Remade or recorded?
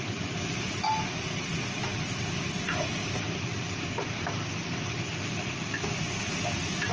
recorded